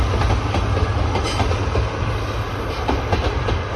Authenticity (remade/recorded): recorded